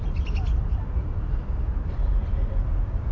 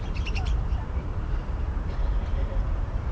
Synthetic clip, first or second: second